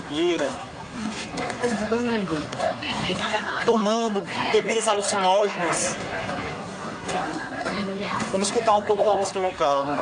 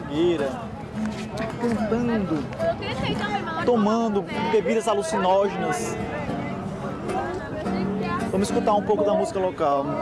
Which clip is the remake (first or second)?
first